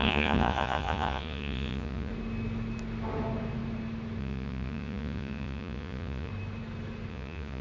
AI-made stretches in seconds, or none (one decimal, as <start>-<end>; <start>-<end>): 0.0-2.1; 4.2-6.3; 7.1-7.6